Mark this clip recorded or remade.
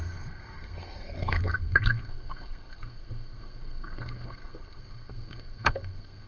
remade